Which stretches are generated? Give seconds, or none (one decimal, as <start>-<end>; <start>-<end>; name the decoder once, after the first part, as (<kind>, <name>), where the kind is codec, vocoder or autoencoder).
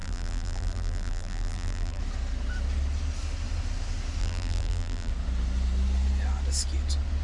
0.0-2.0 (vocoder, BigVGAN v2); 4.2-5.1